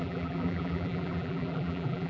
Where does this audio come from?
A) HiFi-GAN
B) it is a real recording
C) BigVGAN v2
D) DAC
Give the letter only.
C